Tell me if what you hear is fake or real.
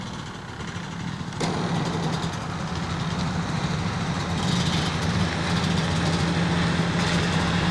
real